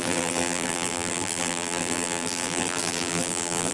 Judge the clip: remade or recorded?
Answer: remade